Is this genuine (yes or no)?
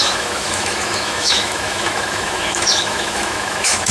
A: no